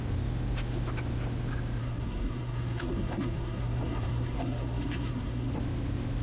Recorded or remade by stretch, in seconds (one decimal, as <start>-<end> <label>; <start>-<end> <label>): 0.0-1.8 recorded; 1.8-5.5 remade; 5.5-6.2 recorded